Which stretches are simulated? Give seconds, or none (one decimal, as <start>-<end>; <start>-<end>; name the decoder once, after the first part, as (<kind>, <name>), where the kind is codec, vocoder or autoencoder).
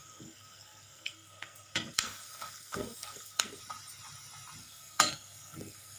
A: 0.0-3.6 (codec, SNAC); 4.6-6.0